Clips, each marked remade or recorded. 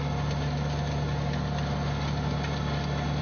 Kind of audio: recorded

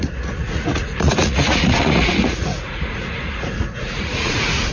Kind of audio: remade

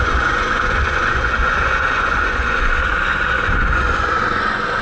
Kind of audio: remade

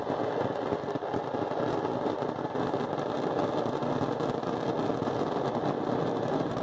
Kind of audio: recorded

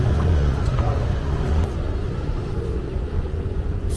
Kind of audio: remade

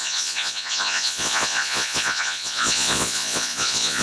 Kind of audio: remade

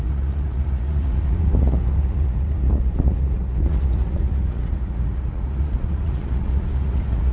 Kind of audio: remade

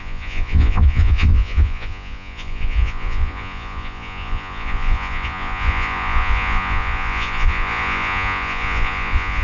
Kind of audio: remade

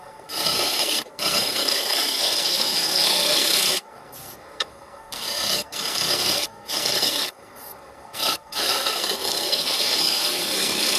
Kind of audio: remade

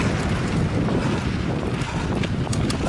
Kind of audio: recorded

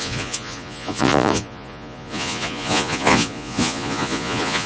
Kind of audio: remade